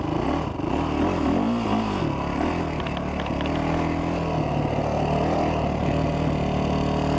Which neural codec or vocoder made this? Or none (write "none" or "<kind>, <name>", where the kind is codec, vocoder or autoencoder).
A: none